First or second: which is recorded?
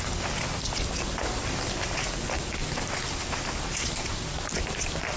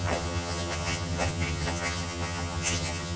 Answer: first